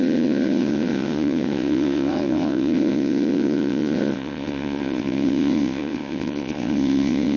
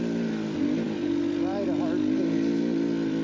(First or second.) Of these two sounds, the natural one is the second